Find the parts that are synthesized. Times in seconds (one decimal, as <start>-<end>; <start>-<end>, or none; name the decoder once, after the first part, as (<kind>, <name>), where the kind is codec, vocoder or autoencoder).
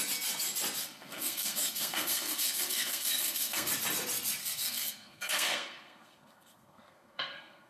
0.8-3.7 (codec, SNAC); 4.4-7.7